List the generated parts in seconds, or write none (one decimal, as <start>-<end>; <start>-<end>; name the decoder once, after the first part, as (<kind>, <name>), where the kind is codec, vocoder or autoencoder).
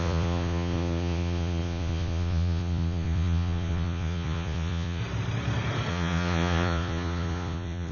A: 0.0-5.0 (vocoder, Vocos); 5.9-7.9